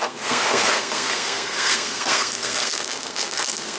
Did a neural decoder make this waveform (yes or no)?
yes